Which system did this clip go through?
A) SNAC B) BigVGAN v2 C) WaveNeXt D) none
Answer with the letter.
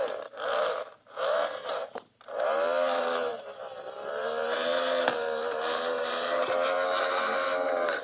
B